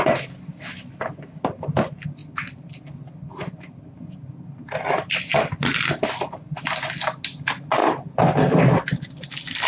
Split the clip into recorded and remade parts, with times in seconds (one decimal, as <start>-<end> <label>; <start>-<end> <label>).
0.0-9.7 recorded